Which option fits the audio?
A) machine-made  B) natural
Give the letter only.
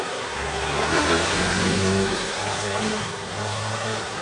A